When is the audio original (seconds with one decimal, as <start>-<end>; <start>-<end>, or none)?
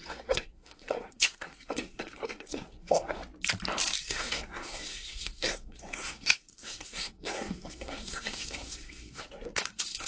3.2-4.0